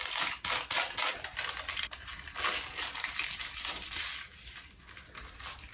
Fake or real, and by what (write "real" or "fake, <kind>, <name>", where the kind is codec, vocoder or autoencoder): real